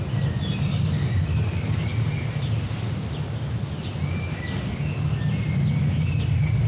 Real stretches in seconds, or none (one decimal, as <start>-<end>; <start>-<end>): 0.0-6.7